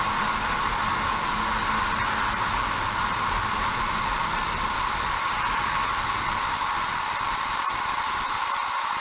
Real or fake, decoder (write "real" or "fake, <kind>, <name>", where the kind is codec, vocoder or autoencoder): real